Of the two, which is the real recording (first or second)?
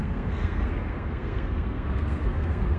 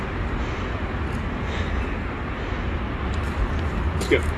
second